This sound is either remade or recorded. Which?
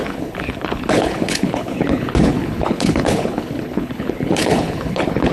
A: remade